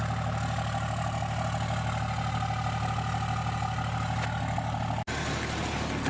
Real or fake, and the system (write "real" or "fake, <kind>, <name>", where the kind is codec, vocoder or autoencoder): real